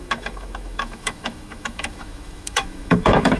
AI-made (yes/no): yes